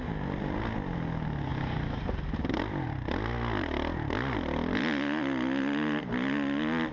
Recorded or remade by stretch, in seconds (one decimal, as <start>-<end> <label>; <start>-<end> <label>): 0.0-6.9 recorded